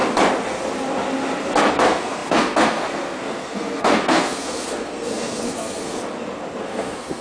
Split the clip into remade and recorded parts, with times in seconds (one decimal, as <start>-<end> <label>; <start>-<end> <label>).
0.0-1.7 recorded; 1.7-6.0 remade; 6.0-6.6 recorded; 6.6-7.2 remade